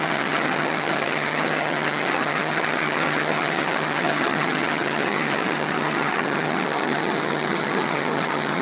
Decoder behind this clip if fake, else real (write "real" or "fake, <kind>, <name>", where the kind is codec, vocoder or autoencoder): fake, vocoder, HiFi-GAN